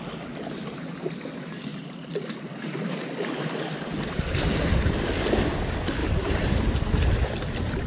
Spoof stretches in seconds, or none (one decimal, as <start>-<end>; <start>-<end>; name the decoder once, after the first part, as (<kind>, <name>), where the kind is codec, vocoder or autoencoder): 1.7-3.0 (vocoder, BigVGAN v2); 6.0-7.3